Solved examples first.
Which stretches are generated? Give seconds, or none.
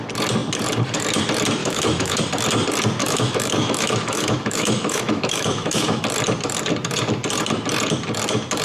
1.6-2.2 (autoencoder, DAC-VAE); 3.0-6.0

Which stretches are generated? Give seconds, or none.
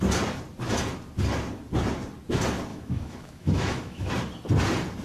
2.7-4.1 (autoencoder, DAC-VAE)